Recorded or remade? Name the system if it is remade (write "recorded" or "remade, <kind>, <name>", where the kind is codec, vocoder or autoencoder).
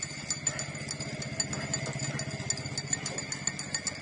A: recorded